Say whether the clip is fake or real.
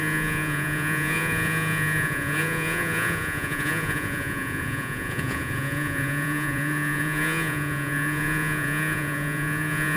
fake